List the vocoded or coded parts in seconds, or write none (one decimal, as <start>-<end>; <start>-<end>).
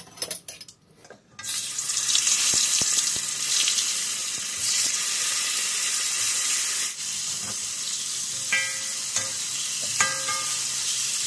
4.2-5.0